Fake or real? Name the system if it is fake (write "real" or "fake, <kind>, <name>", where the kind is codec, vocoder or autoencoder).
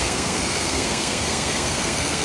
fake, codec, SNAC